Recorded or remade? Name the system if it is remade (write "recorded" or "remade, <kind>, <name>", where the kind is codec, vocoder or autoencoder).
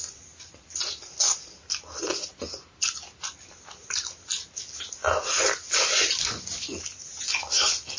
recorded